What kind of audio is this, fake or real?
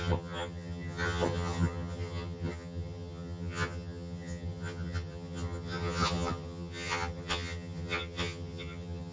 fake